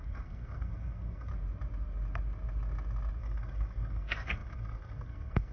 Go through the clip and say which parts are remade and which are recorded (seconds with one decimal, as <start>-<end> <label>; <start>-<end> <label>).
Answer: 0.0-1.3 remade; 1.3-3.2 recorded; 3.2-5.5 remade